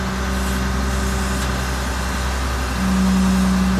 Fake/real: real